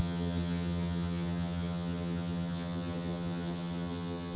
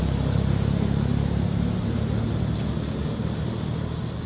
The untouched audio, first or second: second